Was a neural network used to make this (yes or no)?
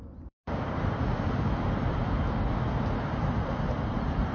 yes